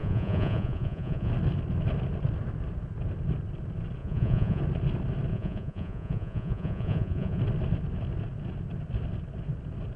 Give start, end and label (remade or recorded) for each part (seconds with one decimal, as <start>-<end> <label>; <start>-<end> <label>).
0.0-1.3 remade; 1.3-4.0 recorded; 4.0-4.6 remade; 4.6-5.3 recorded; 5.3-7.4 remade; 7.4-10.0 recorded